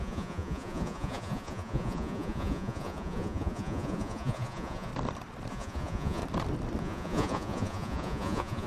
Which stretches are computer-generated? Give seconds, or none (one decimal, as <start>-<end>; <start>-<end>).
0.0-4.9; 5.5-6.2; 6.8-8.7